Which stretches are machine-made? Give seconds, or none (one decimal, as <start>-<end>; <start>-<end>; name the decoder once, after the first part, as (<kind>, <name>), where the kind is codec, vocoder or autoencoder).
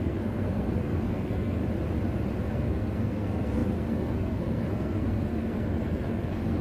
0.0-1.6 (codec, SNAC); 2.4-6.6